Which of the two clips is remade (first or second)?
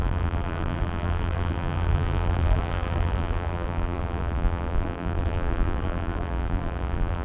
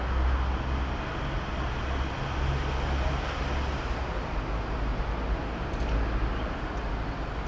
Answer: first